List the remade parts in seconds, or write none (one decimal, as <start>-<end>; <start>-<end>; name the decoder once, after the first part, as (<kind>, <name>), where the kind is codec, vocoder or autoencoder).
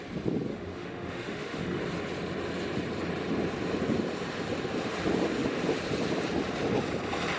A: 0.5-1.8 (autoencoder, DAC-VAE)